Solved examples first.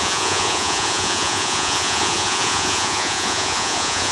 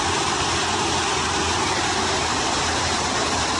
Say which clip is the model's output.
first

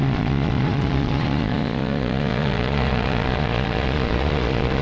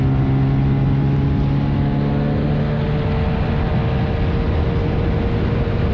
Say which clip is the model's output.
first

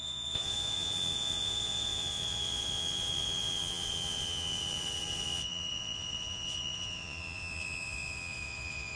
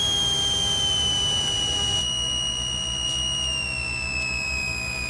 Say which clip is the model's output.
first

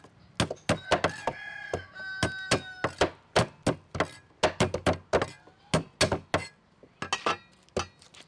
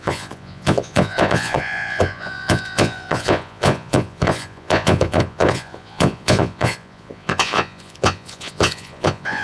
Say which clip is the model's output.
second